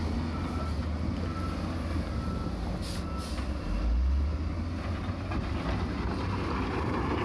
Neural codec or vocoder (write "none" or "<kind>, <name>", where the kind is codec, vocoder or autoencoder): none